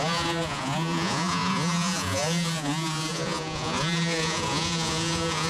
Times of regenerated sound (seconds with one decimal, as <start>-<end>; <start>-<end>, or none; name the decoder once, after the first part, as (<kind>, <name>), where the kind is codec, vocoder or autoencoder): 0.0-5.5 (vocoder, Vocos)